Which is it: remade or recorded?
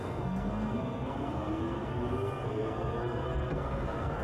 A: remade